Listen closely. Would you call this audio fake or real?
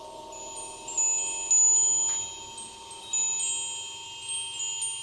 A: real